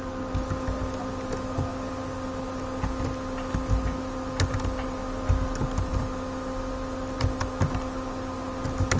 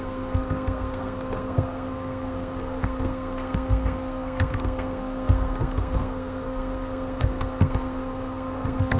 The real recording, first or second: first